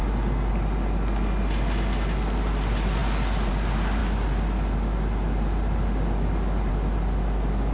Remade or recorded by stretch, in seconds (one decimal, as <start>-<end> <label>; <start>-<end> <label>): 0.0-3.0 recorded; 3.0-3.5 remade; 3.5-4.0 recorded; 4.0-6.7 remade; 6.7-7.7 recorded